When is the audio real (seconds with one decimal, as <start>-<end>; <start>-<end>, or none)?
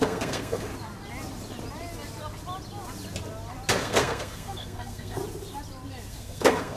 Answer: 0.7-3.8; 5.2-6.1